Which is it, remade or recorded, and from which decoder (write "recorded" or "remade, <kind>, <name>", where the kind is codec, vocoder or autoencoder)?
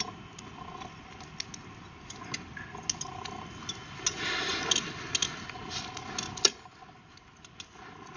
recorded